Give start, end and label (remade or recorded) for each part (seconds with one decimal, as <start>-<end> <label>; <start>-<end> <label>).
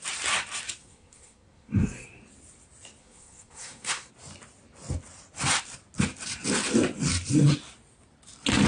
0.0-0.8 recorded; 0.8-2.2 remade; 2.2-3.0 recorded; 3.0-4.1 remade; 4.1-8.7 recorded